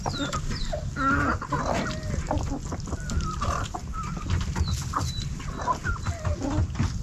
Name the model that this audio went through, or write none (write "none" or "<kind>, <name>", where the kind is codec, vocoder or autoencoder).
none